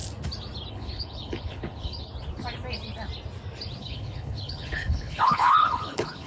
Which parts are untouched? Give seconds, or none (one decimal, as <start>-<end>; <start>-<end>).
0.0-0.7; 2.1-3.8